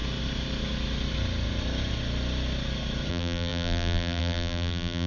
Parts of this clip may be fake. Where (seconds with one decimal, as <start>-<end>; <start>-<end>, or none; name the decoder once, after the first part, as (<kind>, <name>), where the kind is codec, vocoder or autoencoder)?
3.1-5.1 (vocoder, BigVGAN v2)